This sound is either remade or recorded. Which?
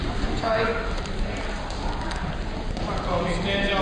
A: recorded